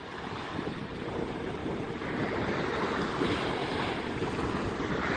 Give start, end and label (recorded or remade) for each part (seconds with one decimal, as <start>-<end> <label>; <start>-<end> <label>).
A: 0.0-5.2 remade